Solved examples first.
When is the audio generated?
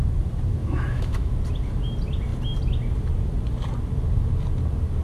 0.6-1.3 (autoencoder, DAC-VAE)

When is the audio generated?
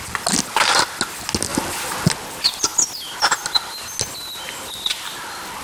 none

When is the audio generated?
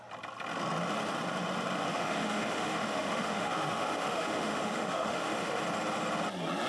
1.9-5.6 (autoencoder, DAC-VAE)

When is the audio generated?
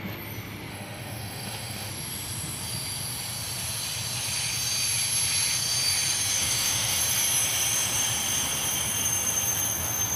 0.7-1.9 (autoencoder, DAC-VAE); 6.4-7.0